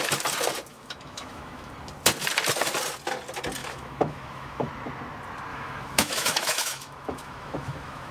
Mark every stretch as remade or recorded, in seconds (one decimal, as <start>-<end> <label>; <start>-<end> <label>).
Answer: 0.0-0.7 recorded; 0.7-1.7 remade; 1.7-3.6 recorded; 3.6-4.7 remade; 4.7-5.5 recorded; 5.5-8.1 remade